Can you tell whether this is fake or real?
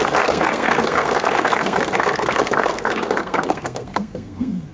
fake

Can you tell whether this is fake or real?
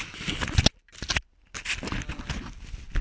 real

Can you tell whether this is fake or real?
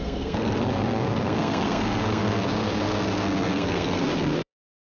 fake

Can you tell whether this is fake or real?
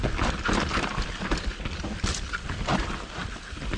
real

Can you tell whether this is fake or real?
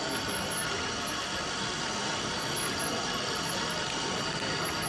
real